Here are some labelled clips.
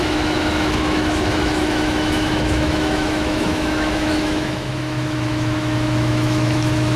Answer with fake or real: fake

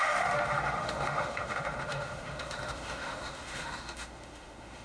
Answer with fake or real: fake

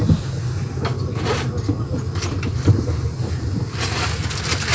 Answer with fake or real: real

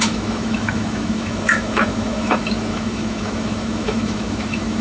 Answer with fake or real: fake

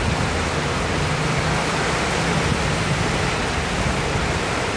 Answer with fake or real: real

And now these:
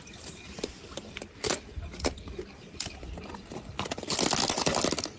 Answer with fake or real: real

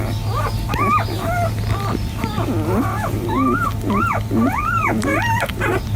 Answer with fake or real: real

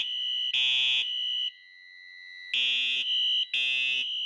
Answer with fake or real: real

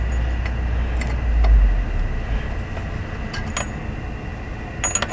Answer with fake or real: real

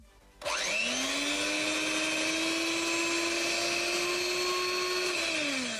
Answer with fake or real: real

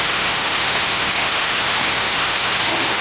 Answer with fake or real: fake